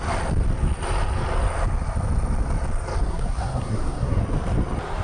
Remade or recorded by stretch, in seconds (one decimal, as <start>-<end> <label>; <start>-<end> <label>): 0.0-3.1 recorded; 3.1-4.2 remade; 4.2-5.0 recorded